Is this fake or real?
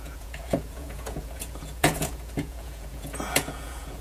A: fake